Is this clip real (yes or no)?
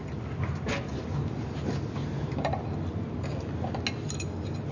yes